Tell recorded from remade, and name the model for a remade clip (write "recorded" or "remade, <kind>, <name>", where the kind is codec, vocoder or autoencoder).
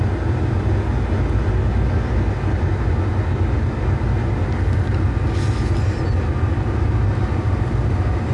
recorded